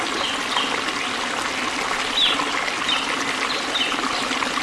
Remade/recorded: recorded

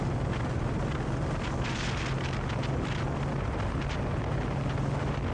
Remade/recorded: recorded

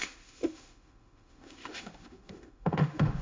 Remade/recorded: remade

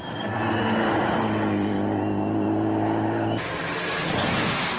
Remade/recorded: recorded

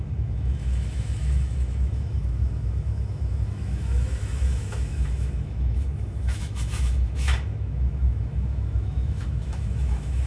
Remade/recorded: remade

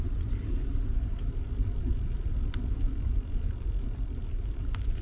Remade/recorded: recorded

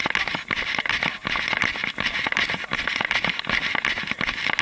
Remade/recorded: recorded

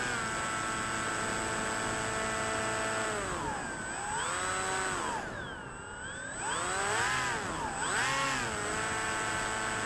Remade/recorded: recorded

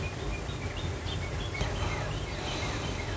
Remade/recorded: recorded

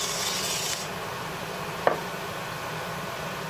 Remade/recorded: recorded